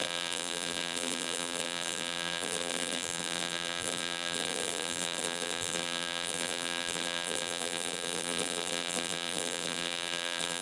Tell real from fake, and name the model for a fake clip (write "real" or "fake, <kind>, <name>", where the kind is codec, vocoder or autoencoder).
fake, vocoder, BigVGAN v2